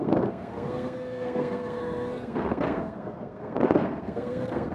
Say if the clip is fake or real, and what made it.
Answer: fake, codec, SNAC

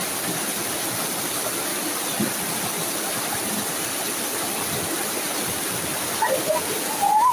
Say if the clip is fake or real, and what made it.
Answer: real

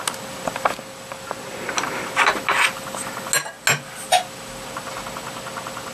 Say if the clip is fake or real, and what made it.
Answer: real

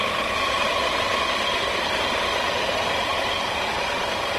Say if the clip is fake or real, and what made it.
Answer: real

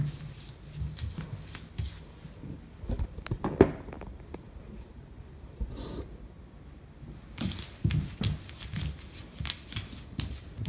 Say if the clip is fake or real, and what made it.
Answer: real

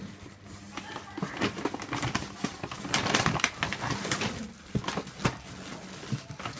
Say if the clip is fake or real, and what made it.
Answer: real